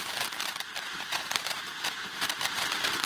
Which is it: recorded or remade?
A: remade